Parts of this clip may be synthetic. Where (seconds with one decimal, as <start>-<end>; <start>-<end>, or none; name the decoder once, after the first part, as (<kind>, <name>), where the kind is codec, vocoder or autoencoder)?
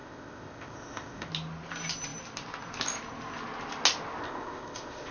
0.0-1.3 (codec, ZipCodec); 4.2-5.1